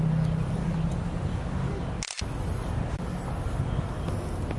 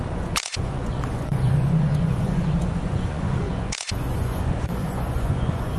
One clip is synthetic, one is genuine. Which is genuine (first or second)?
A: first